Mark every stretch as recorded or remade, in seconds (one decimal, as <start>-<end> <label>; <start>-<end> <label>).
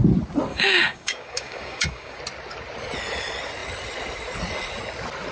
0.0-0.5 recorded; 0.5-2.2 remade; 2.2-5.3 recorded